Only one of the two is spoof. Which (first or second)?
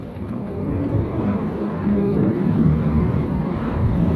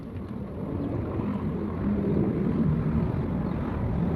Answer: first